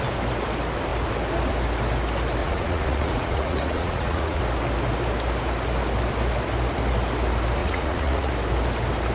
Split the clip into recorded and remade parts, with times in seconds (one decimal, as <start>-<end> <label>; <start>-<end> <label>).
0.0-2.4 recorded; 2.4-4.4 remade; 4.4-7.6 recorded; 7.6-8.3 remade; 8.3-9.1 recorded